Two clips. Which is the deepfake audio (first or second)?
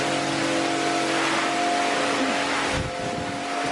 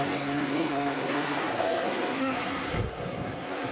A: second